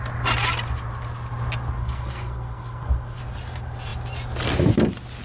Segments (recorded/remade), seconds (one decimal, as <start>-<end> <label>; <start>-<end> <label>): 0.0-1.8 recorded; 1.8-3.2 remade; 3.2-5.2 recorded